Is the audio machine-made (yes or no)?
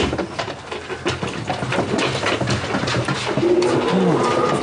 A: no